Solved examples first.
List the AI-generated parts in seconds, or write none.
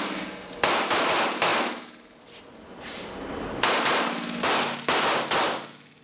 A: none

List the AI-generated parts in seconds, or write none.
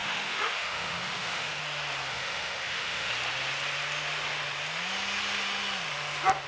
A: 0.0-1.6 (autoencoder, DAC-VAE); 2.1-3.1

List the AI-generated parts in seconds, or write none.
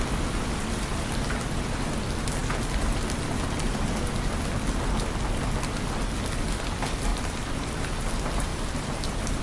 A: 7.1-7.8 (vocoder, BigVGAN v2); 8.5-9.4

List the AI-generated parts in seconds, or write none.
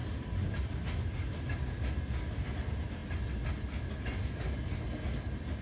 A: 0.0-0.8 (vocoder, BigVGAN v2)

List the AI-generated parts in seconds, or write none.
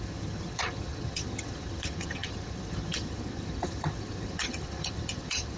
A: 0.0-5.6 (vocoder, HiFi-GAN)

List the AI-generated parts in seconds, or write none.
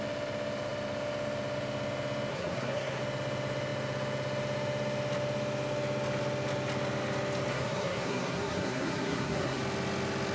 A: 2.3-3.0 (codec, SNAC); 7.5-9.6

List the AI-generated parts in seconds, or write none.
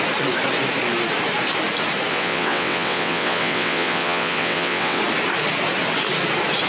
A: 2.1-5.0 (vocoder, WaveNeXt)